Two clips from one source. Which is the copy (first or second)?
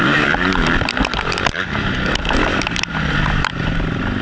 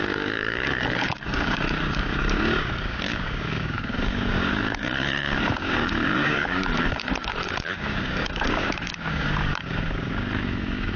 second